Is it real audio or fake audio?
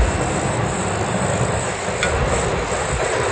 real